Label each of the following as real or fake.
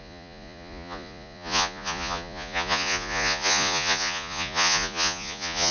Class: fake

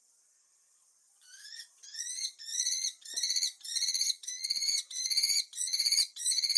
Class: fake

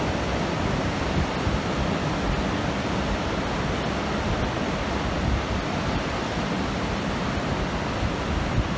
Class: real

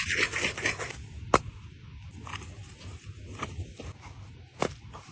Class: real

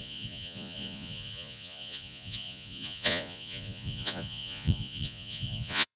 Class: fake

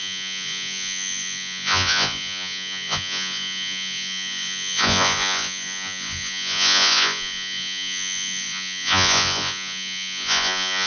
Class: fake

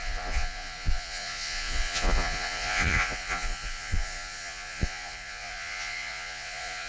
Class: fake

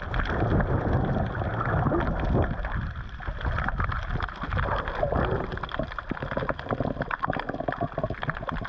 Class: real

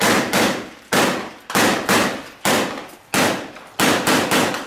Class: real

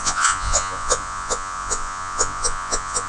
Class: fake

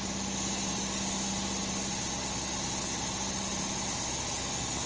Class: real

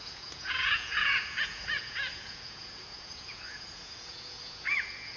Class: fake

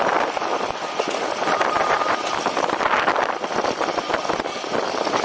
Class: real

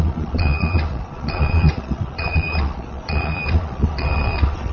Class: fake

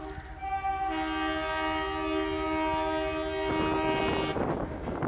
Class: real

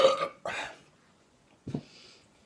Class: fake